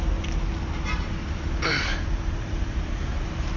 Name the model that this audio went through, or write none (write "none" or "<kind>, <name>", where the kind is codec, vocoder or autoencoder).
none